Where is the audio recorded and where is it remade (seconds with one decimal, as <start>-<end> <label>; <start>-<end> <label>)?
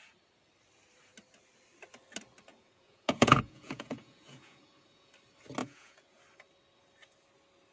0.0-2.5 recorded; 2.5-5.1 remade; 5.1-5.6 recorded; 5.6-6.2 remade; 6.2-7.7 recorded